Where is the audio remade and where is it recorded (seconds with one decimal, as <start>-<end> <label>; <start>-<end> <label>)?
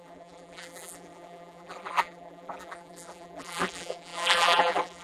0.0-5.0 remade